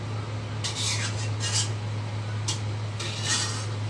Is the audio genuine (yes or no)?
yes